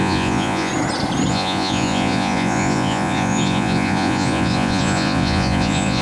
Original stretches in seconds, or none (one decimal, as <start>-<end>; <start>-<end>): 0.7-1.3